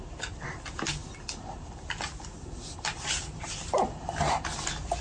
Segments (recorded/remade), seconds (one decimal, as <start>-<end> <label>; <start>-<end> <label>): 0.0-5.0 recorded